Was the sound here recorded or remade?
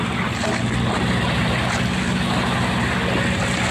recorded